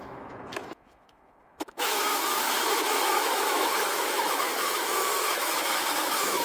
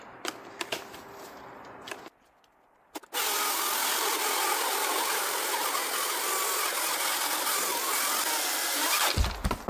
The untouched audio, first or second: second